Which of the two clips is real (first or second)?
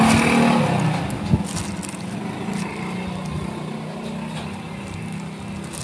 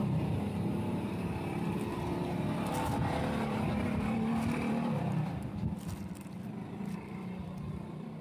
first